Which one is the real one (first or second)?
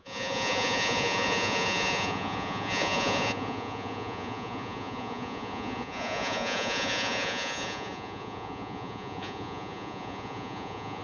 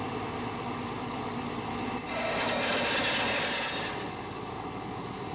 second